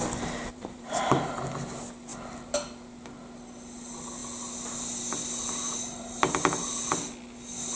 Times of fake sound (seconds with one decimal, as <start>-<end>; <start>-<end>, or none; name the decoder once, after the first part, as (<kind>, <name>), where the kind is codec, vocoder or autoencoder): 0.5-1.1 (vocoder, BigVGAN v2)